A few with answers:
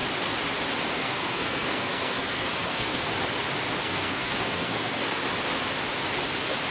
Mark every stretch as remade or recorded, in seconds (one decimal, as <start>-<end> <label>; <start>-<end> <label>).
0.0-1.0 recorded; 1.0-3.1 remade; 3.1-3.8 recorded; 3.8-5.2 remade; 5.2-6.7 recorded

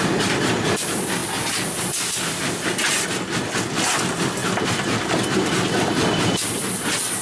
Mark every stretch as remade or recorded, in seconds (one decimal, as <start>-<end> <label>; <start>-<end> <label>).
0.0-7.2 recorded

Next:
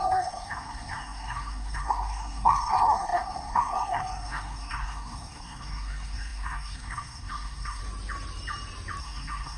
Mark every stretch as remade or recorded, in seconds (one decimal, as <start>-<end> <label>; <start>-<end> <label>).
0.0-7.8 remade; 7.8-9.0 recorded; 9.0-9.6 remade

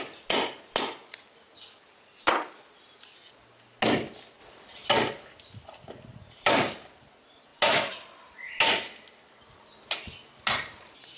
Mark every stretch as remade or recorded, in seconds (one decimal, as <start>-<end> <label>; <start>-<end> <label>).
0.0-11.2 recorded

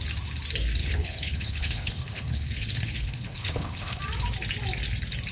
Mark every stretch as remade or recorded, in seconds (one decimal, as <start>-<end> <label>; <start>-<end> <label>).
0.0-0.8 recorded; 0.8-4.0 remade; 4.0-5.3 recorded

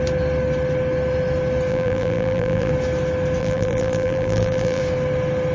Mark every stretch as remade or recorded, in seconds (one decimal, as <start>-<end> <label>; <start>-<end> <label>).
0.0-1.7 recorded; 1.7-2.7 remade; 2.7-3.4 recorded; 3.4-4.8 remade; 4.8-5.5 recorded

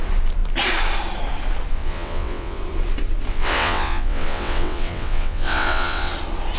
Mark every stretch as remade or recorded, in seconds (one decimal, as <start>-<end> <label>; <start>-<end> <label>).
0.0-1.7 recorded; 1.7-2.6 remade; 2.6-3.3 recorded; 3.3-6.1 remade; 6.1-6.6 recorded

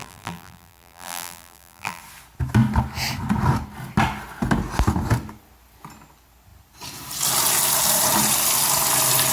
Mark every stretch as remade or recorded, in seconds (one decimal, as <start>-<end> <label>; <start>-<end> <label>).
0.0-2.0 remade; 2.0-9.3 recorded